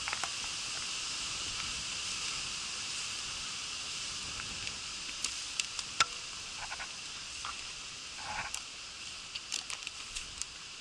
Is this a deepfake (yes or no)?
no